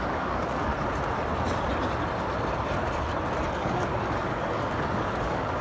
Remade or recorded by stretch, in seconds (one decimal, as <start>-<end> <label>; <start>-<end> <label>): 0.0-0.7 remade; 0.7-3.5 recorded; 3.5-5.6 remade